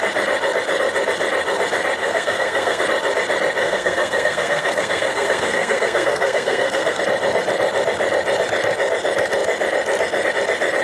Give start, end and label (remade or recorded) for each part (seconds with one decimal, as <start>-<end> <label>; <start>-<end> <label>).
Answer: 0.0-2.0 recorded; 2.0-2.8 remade; 2.8-3.6 recorded; 3.6-7.0 remade; 7.0-10.8 recorded